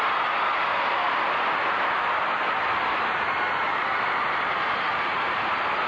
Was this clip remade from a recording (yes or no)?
no